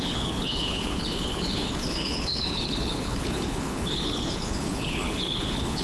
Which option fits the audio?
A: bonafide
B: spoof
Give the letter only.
B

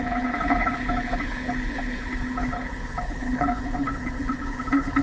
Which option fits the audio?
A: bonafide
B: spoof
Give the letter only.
B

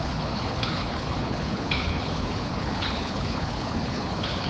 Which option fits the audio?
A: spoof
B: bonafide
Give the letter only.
A